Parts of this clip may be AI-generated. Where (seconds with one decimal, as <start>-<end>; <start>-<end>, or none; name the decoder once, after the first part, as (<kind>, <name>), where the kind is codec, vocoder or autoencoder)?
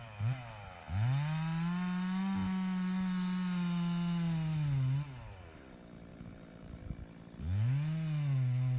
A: 6.1-6.8 (vocoder, BigVGAN v2)